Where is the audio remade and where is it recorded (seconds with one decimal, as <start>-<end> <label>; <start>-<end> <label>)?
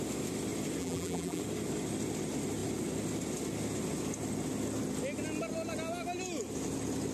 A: 0.0-0.8 recorded; 0.8-1.4 remade; 1.4-7.1 recorded